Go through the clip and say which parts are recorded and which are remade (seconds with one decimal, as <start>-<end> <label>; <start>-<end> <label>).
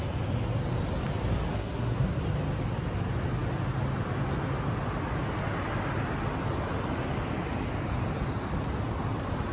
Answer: 0.0-1.5 recorded; 1.5-2.2 remade; 2.2-9.5 recorded